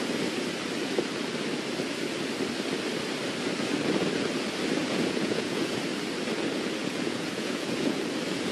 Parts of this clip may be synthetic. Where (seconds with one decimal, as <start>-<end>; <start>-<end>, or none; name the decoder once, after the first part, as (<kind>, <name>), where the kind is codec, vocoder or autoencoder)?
4.8-5.7 (vocoder, Vocos); 6.8-8.0